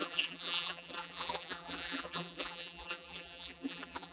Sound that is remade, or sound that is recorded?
remade